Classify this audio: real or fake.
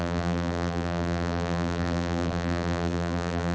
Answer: fake